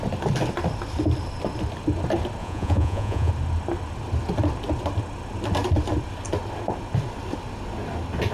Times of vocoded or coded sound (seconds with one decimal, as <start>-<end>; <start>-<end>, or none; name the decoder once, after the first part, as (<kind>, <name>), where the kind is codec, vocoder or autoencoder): 2.4-3.3 (vocoder, Vocos)